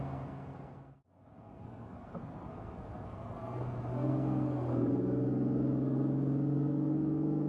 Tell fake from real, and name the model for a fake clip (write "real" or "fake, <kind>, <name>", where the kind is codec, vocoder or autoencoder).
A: fake, codec, SNAC